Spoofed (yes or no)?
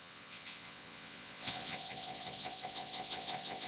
yes